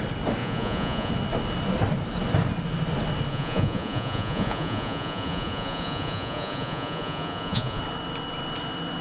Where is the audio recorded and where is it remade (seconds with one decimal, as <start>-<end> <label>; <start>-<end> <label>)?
0.0-0.4 recorded; 0.4-1.1 remade; 1.1-3.3 recorded; 3.3-7.8 remade; 7.8-9.0 recorded